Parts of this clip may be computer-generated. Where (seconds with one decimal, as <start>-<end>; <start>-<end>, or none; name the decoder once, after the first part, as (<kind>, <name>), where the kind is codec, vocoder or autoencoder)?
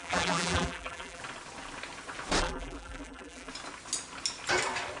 0.0-1.2 (vocoder, BigVGAN v2); 2.4-3.5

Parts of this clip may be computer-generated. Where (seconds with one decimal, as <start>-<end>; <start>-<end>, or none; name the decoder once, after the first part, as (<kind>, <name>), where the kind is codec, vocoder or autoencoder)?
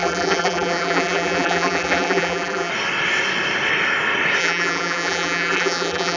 0.0-2.7 (vocoder, BigVGAN v2); 4.4-6.2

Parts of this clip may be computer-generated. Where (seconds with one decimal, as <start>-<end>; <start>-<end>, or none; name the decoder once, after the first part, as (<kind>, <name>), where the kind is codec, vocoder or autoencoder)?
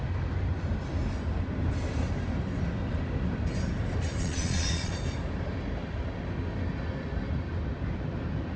4.2-4.9 (vocoder, Vocos)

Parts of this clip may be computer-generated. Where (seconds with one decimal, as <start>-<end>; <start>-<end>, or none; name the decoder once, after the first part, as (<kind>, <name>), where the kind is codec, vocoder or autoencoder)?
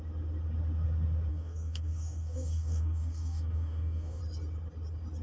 1.3-4.2 (codec, DAC)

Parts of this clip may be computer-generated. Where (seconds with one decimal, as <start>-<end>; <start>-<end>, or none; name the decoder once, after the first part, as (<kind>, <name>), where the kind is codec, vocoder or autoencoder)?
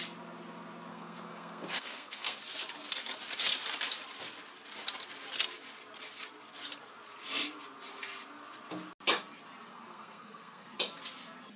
0.9-2.4 (codec, SNAC); 9.7-10.7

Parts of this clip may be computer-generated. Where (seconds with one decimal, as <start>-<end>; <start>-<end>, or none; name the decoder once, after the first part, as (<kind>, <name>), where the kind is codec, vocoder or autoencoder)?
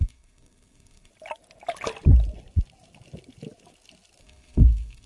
0.0-1.1 (codec, SNAC); 4.2-5.1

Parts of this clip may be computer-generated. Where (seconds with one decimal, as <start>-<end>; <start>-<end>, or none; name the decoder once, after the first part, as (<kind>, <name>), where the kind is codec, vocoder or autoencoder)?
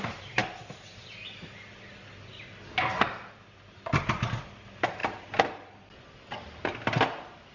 none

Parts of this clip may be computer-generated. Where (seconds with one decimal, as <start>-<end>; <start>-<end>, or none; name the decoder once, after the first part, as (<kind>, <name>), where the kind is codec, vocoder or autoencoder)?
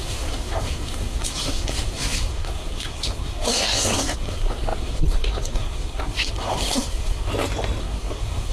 0.0-7.3 (codec, SNAC); 7.8-8.5